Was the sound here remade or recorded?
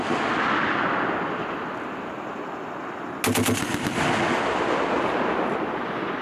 recorded